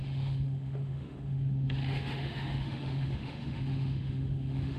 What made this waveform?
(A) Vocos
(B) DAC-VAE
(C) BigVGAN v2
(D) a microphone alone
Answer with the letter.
B